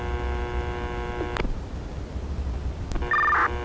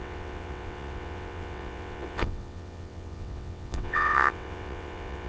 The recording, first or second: first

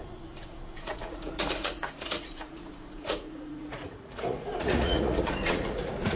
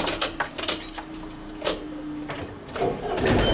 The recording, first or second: second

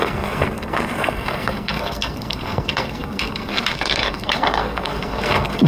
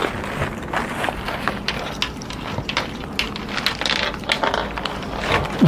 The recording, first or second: second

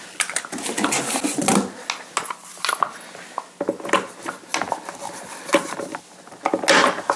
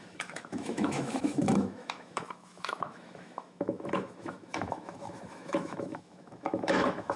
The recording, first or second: first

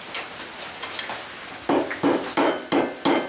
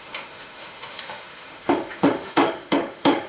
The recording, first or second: first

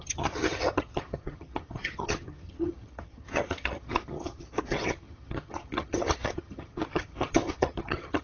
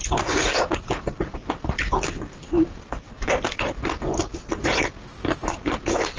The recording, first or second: second